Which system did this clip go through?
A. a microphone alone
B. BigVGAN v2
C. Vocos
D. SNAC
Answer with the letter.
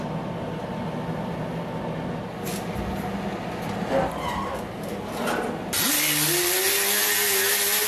A